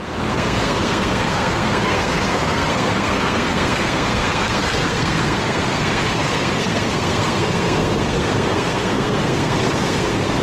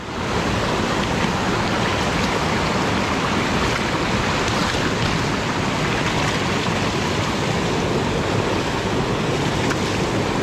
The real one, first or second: second